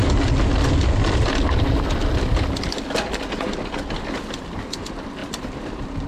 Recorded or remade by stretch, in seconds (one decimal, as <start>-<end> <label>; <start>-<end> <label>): 0.0-5.2 recorded; 5.2-6.1 remade